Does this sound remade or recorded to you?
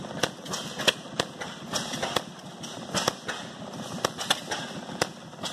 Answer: recorded